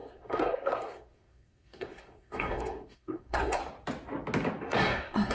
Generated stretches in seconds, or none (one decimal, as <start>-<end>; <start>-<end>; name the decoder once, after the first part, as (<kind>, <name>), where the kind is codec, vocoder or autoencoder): 0.0-3.6 (codec, SNAC); 4.6-5.3